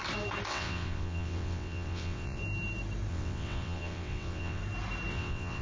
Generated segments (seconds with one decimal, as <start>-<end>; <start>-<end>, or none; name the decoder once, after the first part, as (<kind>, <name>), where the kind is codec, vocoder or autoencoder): 0.5-2.4 (vocoder, WaveNeXt); 3.1-4.6; 5.1-5.6